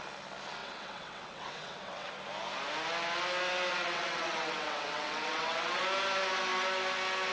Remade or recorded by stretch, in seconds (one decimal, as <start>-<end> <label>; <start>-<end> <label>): 0.0-0.6 recorded; 0.6-2.1 remade; 2.1-3.7 recorded; 3.7-5.8 remade; 5.8-7.3 recorded